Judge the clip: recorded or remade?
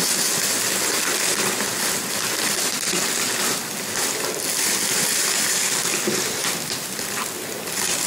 recorded